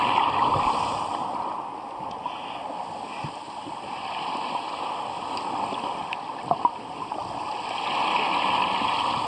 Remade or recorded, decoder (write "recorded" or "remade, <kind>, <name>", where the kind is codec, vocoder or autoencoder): recorded